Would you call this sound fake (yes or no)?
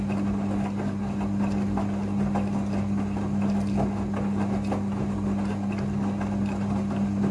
no